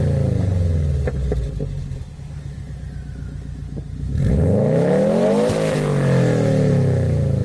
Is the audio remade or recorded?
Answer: recorded